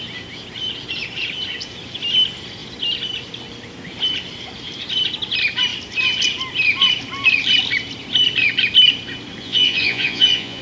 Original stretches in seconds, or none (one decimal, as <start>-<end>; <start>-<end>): 0.0-9.4